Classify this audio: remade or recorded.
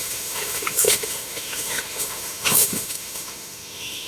remade